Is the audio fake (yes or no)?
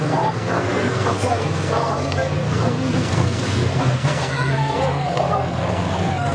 yes